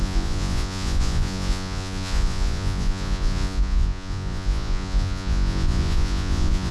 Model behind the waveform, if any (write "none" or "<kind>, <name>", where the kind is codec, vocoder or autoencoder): vocoder, Vocos